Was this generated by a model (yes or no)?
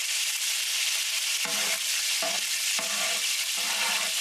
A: no